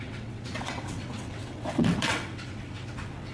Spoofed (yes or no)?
yes